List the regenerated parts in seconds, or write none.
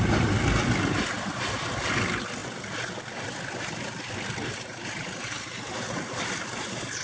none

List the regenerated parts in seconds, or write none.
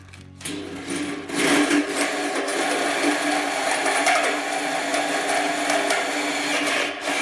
none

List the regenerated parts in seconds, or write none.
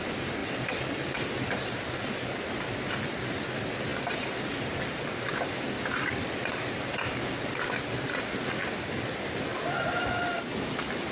0.4-2.1 (vocoder, BigVGAN v2); 3.9-7.5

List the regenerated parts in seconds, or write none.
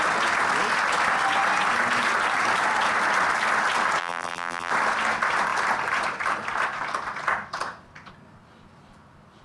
4.0-4.7 (vocoder, BigVGAN v2)